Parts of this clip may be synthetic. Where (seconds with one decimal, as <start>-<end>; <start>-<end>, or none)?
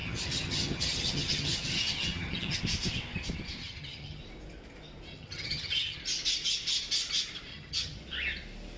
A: 0.0-2.6; 3.6-4.2; 5.1-6.0; 7.5-8.0